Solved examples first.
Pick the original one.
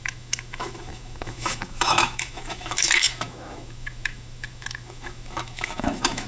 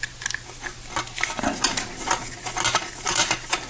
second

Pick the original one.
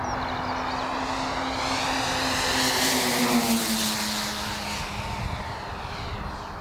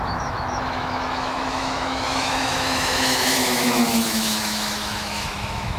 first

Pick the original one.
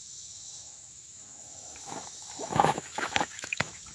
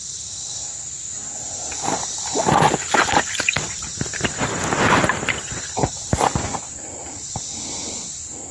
second